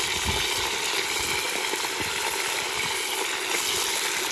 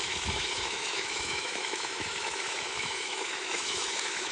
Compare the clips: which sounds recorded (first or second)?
first